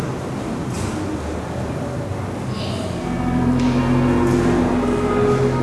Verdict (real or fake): real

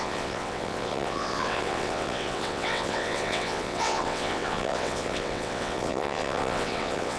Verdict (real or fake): fake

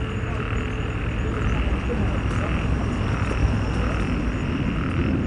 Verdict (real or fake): real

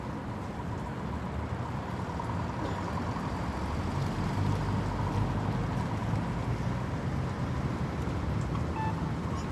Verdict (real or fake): real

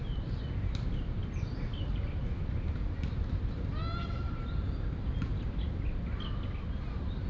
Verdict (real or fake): real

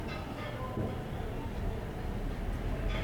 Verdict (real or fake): real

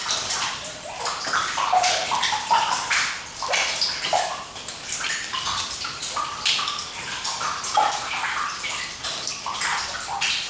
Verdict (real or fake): fake